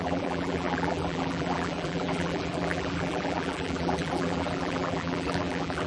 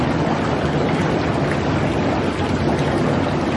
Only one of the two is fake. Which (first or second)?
first